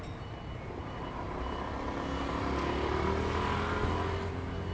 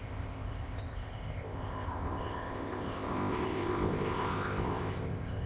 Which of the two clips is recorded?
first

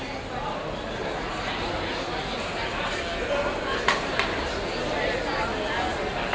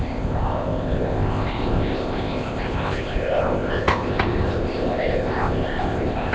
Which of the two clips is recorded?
first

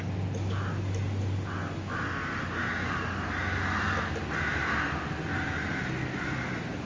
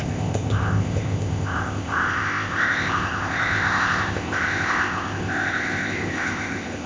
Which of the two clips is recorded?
first